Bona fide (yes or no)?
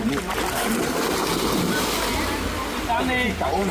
yes